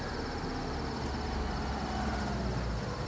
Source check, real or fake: real